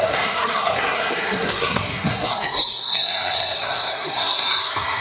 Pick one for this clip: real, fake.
fake